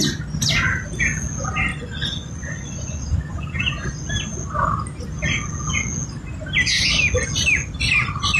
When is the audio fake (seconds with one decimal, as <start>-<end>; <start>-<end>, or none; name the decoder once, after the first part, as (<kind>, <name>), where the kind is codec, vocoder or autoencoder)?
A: 1.7-3.9 (vocoder, Vocos)